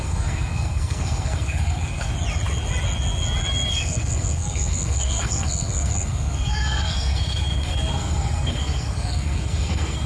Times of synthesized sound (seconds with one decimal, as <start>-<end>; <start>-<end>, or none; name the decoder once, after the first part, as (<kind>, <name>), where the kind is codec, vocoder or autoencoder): 0.0-2.1 (codec, SNAC); 3.7-10.1